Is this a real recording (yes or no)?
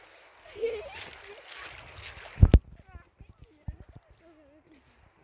yes